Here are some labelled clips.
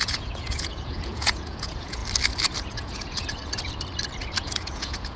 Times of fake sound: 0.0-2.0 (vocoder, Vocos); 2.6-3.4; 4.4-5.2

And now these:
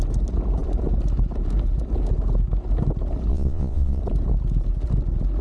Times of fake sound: 3.3-4.0 (vocoder, Vocos)

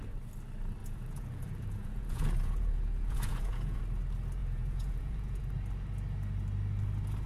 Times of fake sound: 0.8-3.8 (vocoder, Vocos); 4.4-5.4

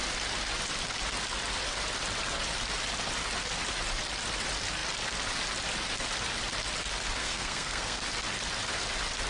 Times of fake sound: 7.2-8.0 (codec, SNAC)